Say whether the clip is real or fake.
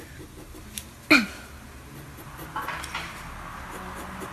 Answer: real